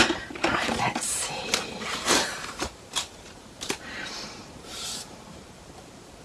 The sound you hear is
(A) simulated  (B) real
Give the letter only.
A